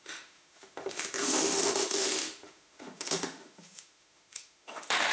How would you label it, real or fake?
fake